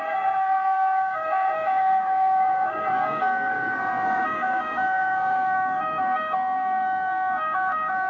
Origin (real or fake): fake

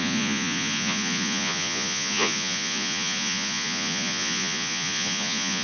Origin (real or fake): fake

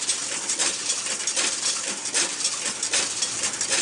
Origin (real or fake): real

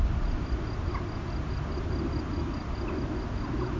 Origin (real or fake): real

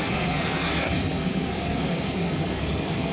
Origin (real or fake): fake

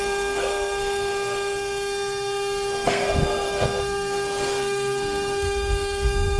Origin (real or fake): fake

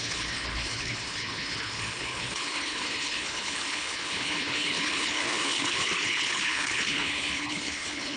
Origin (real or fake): fake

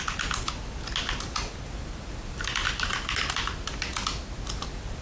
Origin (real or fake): real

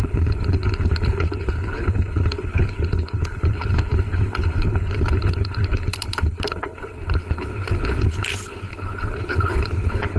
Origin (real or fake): fake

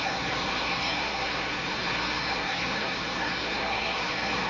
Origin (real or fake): fake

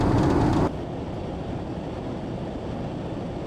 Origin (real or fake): real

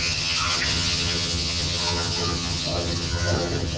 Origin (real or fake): fake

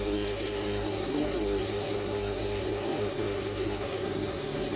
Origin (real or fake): fake